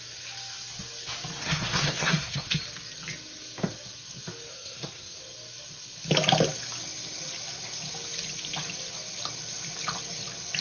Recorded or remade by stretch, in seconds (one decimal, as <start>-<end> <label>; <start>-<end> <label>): 0.0-1.4 recorded; 1.4-2.5 remade; 2.5-4.5 recorded; 4.5-5.2 remade; 5.2-10.6 recorded